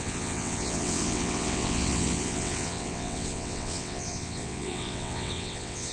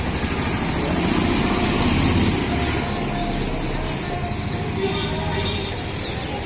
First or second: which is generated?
first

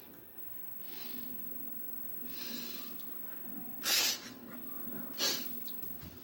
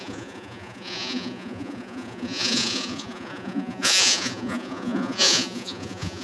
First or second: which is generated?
second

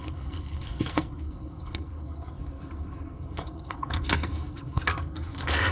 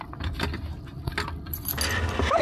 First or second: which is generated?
first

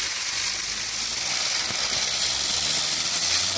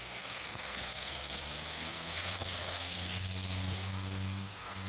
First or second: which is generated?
second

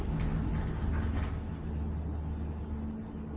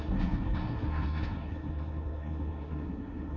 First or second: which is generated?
second